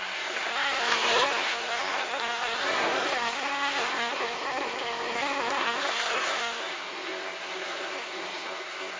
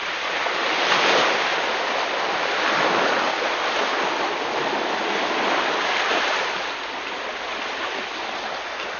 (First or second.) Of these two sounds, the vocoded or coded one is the first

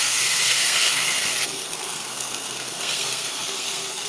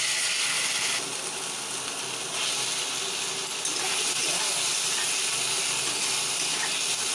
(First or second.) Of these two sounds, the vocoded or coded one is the first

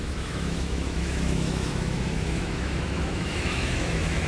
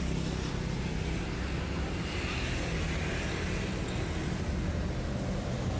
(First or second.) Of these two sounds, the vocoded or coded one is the first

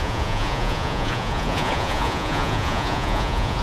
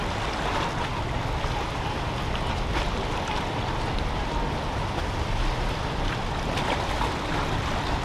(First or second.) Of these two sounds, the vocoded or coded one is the first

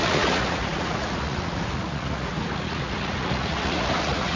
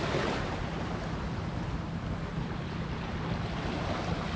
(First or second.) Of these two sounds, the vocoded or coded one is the first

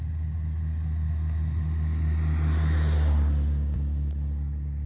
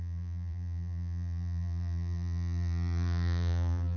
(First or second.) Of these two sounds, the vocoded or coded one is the second